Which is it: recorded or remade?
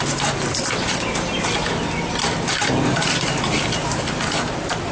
recorded